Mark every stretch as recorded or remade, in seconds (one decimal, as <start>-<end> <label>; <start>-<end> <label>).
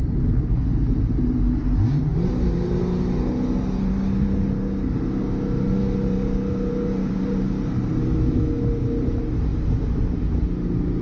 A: 0.0-0.7 recorded; 0.7-1.2 remade; 1.2-11.0 recorded